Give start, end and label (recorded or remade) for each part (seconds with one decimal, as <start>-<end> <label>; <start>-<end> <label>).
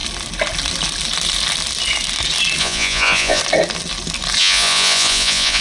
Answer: 0.0-2.6 recorded; 2.6-3.4 remade; 3.4-4.4 recorded; 4.4-5.6 remade